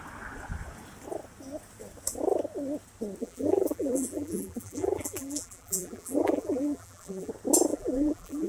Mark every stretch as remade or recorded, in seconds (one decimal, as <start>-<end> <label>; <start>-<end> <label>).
0.0-3.2 recorded; 3.2-7.3 remade; 7.3-7.7 recorded; 7.7-8.5 remade